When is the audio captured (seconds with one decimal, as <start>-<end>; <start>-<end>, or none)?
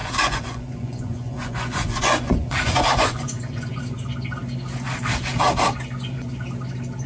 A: 3.8-7.1